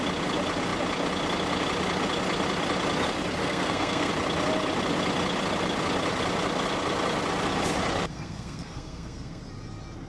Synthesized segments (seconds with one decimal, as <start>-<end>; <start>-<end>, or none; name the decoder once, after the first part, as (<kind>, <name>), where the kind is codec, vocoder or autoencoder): 3.4-4.1 (codec, SNAC); 8.1-9.4